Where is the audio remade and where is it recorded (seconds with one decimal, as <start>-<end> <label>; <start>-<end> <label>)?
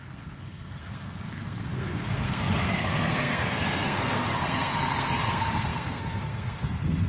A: 0.0-7.1 remade